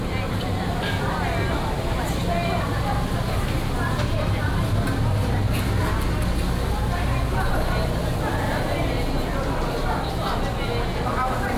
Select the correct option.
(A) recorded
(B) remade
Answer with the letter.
A